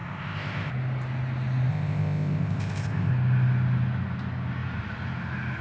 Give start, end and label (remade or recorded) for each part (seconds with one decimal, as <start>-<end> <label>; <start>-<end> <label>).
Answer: 0.0-0.7 remade; 0.7-1.7 recorded; 1.7-3.1 remade; 3.1-5.6 recorded